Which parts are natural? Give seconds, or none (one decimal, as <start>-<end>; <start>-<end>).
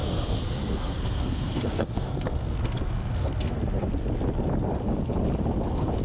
3.6-6.0